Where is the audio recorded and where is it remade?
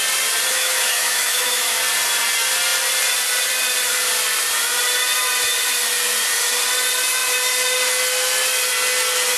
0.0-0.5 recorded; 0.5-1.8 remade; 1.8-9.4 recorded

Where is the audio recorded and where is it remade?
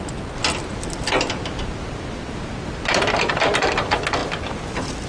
0.0-5.1 recorded